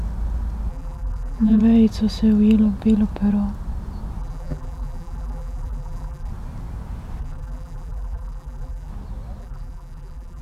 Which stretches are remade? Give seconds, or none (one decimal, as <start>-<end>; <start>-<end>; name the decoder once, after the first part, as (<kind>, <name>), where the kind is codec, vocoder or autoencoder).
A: 0.7-1.6 (vocoder, BigVGAN v2); 4.2-6.3; 7.2-8.9; 9.4-10.4